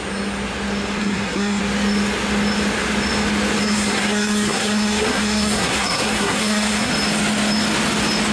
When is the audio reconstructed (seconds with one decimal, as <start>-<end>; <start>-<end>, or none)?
1.0-1.6; 3.6-6.9